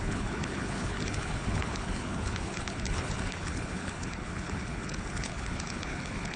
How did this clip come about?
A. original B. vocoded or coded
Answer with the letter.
B